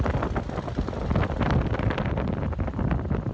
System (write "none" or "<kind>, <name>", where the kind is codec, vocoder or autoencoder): none